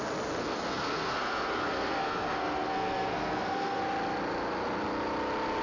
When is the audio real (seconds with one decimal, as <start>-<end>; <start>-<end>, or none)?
0.0-0.4; 3.8-5.6